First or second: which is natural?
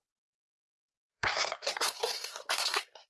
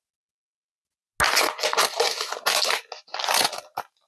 second